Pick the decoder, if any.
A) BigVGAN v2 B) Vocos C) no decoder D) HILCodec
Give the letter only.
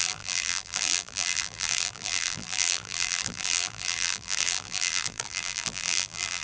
A